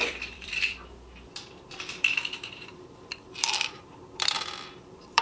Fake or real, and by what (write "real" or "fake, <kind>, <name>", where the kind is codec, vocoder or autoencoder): fake, vocoder, BigVGAN v2